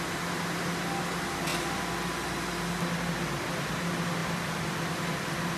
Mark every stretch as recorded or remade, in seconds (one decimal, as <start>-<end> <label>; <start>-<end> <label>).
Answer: 0.0-5.6 recorded